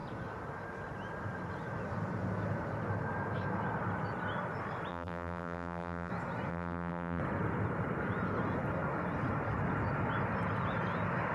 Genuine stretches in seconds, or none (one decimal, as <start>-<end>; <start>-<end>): 0.0-4.9; 6.1-6.5; 7.2-11.3